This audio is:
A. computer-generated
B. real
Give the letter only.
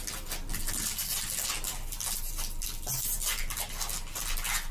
B